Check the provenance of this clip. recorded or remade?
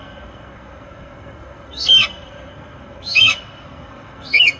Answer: remade